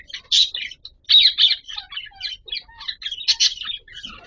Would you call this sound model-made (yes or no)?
no